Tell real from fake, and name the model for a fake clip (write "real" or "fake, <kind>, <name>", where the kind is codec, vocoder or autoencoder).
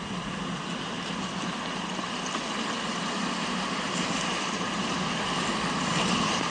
real